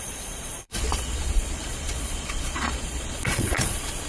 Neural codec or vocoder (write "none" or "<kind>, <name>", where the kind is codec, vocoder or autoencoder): vocoder, Vocos